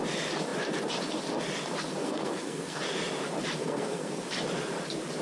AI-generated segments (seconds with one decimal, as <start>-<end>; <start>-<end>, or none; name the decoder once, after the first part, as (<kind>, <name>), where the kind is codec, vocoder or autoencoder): 1.9-2.8 (codec, SNAC); 3.6-4.2